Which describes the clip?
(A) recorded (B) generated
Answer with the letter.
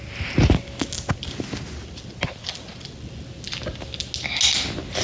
A